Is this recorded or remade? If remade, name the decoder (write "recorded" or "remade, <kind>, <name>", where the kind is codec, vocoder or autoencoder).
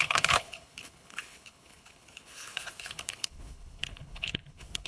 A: remade, codec, HILCodec